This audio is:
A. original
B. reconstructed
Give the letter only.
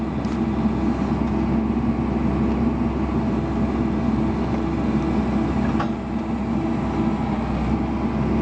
A